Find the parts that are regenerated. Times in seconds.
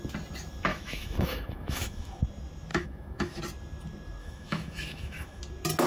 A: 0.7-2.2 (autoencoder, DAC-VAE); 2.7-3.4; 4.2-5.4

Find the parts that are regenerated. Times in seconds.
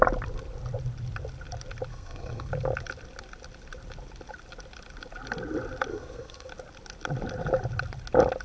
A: 1.9-2.5 (codec, SNAC); 5.9-6.5